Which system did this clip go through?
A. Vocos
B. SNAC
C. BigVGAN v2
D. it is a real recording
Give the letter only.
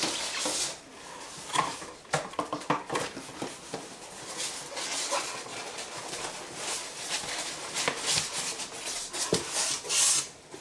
D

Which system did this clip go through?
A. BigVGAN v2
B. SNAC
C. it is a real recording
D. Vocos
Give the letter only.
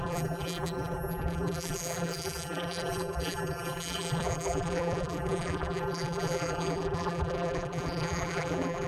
A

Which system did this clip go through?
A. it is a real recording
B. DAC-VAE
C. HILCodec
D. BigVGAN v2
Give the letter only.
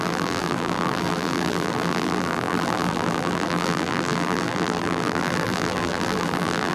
D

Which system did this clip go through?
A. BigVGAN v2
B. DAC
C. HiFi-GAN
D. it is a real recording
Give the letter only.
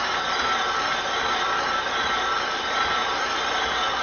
A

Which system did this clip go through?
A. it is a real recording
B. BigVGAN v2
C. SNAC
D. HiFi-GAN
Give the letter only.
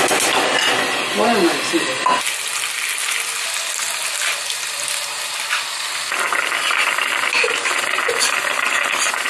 A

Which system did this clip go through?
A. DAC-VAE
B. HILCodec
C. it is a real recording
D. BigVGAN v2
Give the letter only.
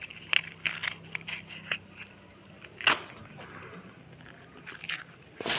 C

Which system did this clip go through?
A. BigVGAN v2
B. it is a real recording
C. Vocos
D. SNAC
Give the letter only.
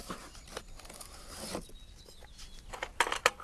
B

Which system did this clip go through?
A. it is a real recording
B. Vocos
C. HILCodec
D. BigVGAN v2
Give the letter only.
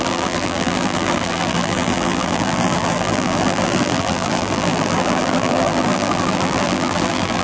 D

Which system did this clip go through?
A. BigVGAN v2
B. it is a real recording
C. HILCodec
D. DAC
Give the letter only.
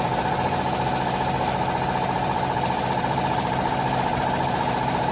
A